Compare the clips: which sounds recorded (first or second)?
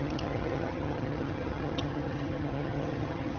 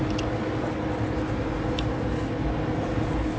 second